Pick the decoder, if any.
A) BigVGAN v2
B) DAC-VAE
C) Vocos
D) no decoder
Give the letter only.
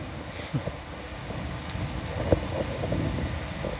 D